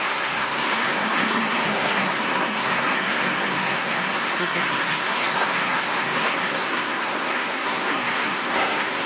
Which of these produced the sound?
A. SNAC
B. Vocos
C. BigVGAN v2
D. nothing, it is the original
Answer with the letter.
A